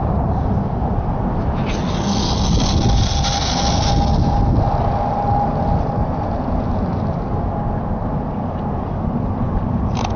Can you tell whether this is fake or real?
real